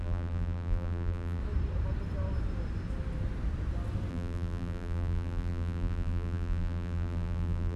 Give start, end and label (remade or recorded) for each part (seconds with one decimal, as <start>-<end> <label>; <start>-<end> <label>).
0.0-1.4 remade; 1.4-4.1 recorded; 4.1-7.8 remade